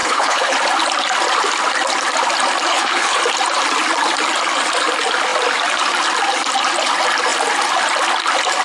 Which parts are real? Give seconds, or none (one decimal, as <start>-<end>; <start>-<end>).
0.5-2.7; 3.2-8.6